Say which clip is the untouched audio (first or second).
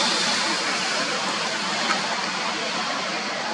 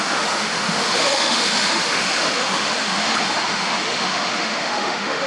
first